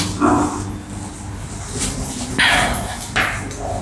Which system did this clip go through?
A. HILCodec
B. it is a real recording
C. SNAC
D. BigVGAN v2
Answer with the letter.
B